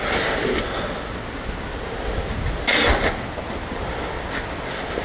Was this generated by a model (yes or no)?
no